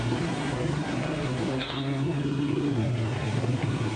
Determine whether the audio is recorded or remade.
remade